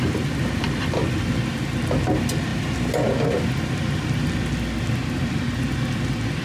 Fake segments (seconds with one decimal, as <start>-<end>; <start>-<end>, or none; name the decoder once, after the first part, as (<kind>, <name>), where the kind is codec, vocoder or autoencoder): none